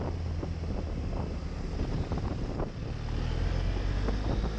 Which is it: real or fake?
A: real